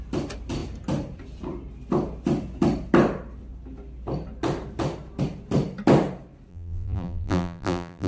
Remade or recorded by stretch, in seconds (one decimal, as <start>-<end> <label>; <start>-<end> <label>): 0.0-6.5 recorded; 6.5-8.1 remade